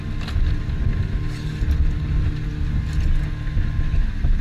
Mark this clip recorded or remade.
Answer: recorded